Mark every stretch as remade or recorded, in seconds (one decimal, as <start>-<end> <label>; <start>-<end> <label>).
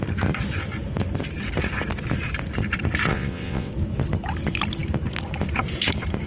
0.0-3.1 recorded; 3.1-3.7 remade; 3.7-6.3 recorded